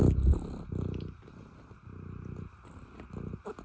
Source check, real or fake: real